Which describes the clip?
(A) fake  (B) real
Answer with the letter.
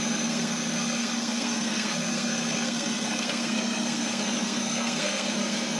A